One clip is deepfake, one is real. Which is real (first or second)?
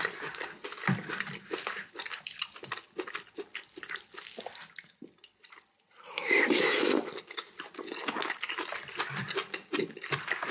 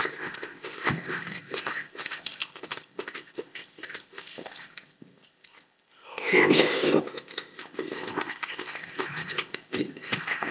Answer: first